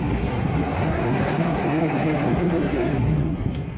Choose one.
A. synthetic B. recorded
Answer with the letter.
A